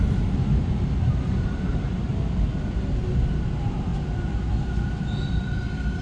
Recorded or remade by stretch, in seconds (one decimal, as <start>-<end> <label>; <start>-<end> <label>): 0.0-6.0 recorded